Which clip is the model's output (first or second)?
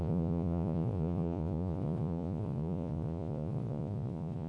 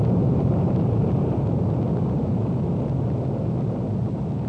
first